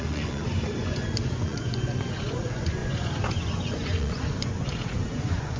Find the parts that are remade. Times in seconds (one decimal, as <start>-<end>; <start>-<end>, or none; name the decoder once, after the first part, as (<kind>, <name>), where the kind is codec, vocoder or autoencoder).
0.0-5.6 (vocoder, Vocos)

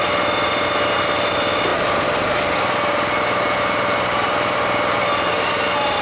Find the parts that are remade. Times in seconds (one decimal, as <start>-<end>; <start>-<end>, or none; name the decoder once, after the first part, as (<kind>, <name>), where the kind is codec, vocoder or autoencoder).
none

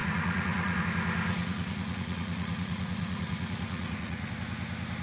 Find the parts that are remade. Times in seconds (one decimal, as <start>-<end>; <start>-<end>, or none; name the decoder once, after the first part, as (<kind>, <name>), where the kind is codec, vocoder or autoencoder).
0.0-0.8 (vocoder, Vocos); 1.3-4.3

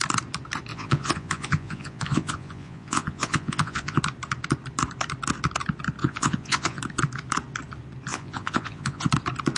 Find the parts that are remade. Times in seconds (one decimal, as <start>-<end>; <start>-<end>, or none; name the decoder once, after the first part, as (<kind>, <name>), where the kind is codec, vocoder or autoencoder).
0.7-4.0 (vocoder, Vocos); 6.0-6.8; 8.1-9.1

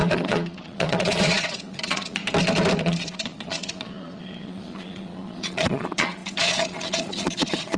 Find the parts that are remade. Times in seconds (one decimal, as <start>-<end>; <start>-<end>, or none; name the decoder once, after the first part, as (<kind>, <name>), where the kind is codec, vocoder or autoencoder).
0.0-2.2 (vocoder, Vocos); 2.8-7.8

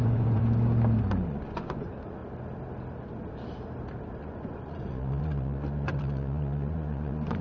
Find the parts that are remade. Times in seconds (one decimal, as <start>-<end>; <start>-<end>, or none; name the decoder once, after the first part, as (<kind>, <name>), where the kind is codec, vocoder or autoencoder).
0.0-0.4 (vocoder, Vocos); 1.0-2.2; 4.2-7.4